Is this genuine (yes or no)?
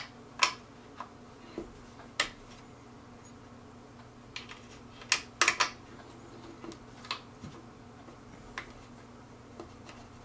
yes